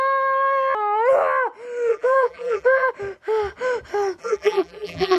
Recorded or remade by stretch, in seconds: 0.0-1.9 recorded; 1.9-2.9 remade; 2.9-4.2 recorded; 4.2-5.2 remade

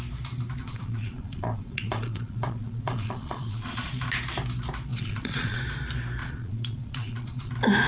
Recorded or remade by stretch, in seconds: 0.0-0.6 recorded; 0.6-4.0 remade; 4.0-4.9 recorded; 4.9-5.6 remade; 5.6-6.2 recorded; 6.2-7.5 remade; 7.5-7.9 recorded

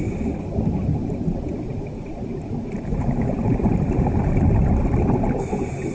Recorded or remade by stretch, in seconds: 0.0-1.0 recorded; 1.0-4.2 remade; 4.2-5.9 recorded